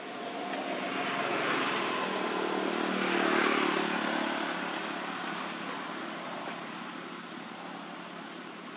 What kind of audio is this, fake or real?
real